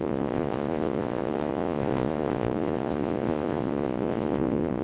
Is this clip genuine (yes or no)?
no